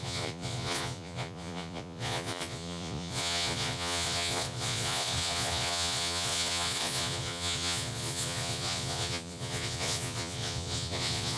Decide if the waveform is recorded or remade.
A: remade